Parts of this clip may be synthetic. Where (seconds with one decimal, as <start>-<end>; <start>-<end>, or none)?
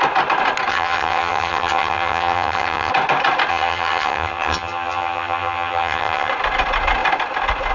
0.7-2.9; 3.5-6.3